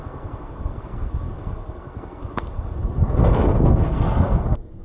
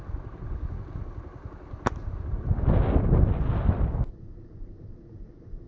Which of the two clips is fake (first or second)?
first